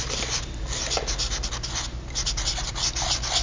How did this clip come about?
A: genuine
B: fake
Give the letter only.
A